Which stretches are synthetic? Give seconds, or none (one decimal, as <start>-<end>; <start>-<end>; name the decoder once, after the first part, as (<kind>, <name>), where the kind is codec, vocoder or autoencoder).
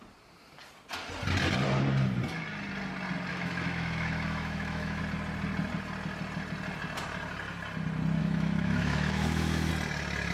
3.3-5.0 (autoencoder, DAC-VAE); 8.2-9.7